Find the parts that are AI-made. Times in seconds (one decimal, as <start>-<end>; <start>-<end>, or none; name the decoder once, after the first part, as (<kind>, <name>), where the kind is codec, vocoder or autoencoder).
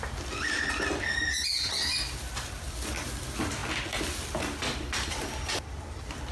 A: none